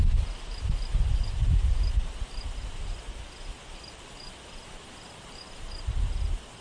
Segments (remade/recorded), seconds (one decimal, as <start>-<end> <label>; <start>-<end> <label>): 0.0-6.6 recorded

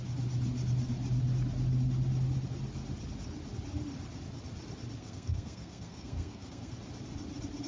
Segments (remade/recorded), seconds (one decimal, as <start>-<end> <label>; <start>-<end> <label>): 0.0-5.0 recorded; 5.0-6.7 remade; 6.7-7.7 recorded

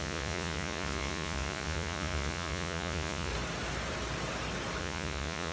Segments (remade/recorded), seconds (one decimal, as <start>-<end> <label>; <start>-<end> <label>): 0.0-3.3 remade; 3.3-4.8 recorded; 4.8-5.5 remade

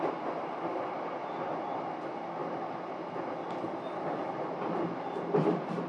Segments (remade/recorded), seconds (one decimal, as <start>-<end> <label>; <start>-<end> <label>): 0.0-5.9 recorded